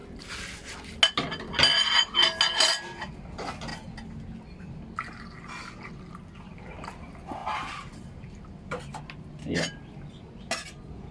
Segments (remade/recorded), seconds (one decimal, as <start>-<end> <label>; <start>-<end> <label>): 0.0-0.8 remade; 0.8-7.4 recorded; 7.4-8.3 remade; 8.3-11.1 recorded